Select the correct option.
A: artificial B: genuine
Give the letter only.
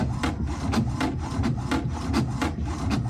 B